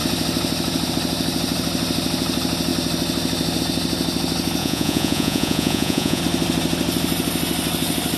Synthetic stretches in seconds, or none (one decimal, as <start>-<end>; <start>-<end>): 4.6-6.2